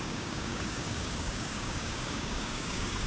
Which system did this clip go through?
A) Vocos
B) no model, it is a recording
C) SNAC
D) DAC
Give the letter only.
D